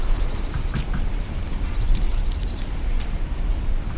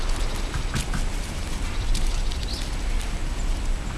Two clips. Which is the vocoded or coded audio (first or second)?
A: first